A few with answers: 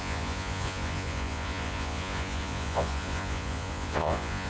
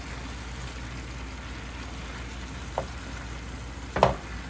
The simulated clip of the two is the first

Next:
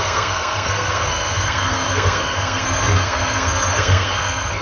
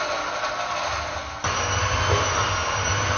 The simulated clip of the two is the first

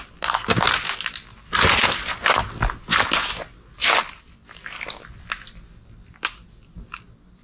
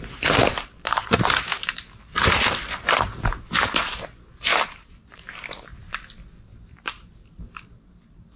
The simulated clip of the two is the second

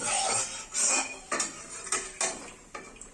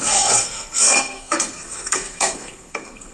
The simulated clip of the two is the second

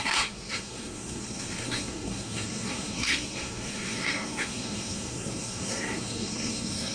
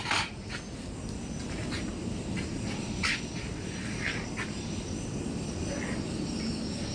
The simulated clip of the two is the first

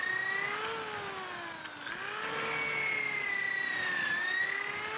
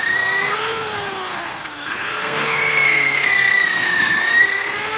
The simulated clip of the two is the second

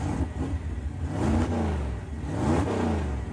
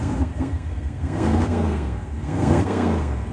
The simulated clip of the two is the second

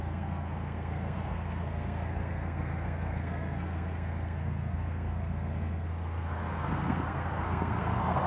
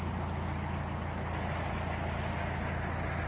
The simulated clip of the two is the first